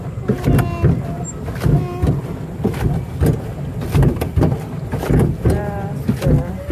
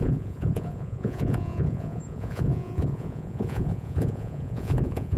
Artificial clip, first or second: second